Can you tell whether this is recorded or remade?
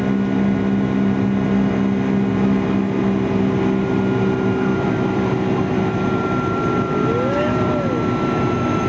recorded